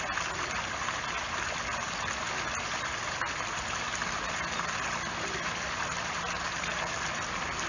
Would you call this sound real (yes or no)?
yes